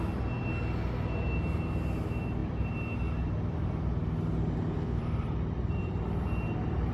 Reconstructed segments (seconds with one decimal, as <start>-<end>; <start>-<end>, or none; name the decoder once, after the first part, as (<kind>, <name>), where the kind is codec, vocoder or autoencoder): 2.4-5.8 (vocoder, BigVGAN v2)